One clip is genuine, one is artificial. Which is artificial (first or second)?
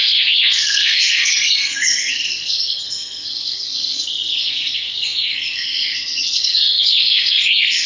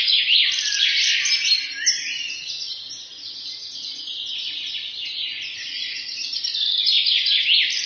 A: first